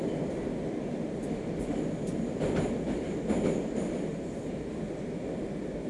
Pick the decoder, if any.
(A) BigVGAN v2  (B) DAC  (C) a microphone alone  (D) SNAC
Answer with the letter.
C